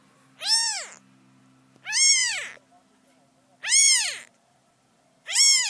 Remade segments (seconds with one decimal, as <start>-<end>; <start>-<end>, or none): 2.2-5.7